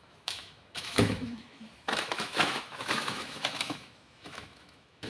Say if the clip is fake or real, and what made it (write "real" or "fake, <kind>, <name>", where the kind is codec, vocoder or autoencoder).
fake, autoencoder, DAC-VAE